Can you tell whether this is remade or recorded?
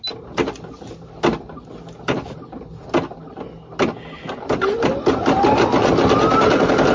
recorded